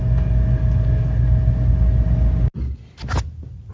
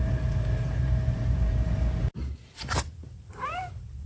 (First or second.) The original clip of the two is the first